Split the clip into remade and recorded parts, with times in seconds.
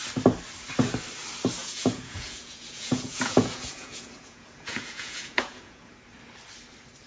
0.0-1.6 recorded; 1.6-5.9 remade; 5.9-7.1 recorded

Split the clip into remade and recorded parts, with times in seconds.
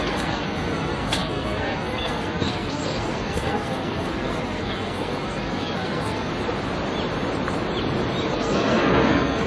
0.0-6.3 remade; 6.3-8.3 recorded; 8.3-9.5 remade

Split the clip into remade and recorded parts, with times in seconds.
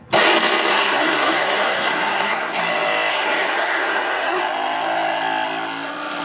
0.0-0.7 recorded; 0.7-2.6 remade; 2.6-3.1 recorded; 3.1-4.4 remade; 4.4-6.2 recorded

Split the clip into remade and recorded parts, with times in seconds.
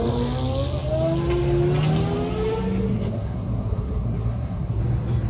0.0-2.9 recorded; 2.9-4.8 remade; 4.8-5.3 recorded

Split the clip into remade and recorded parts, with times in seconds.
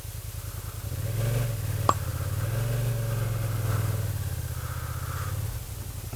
0.0-6.2 recorded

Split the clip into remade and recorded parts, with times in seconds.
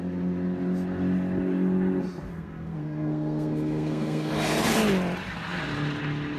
0.0-2.3 recorded; 2.3-4.3 remade; 4.3-6.4 recorded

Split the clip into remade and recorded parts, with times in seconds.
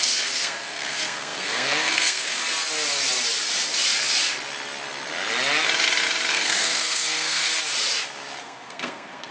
0.0-2.4 remade; 2.4-6.3 recorded; 6.3-7.5 remade; 7.5-8.4 recorded; 8.4-9.3 remade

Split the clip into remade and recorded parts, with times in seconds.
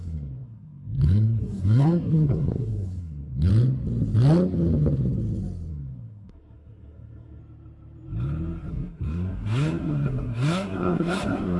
0.0-3.5 remade; 3.5-5.7 recorded; 5.7-7.4 remade; 7.4-8.7 recorded; 8.7-11.6 remade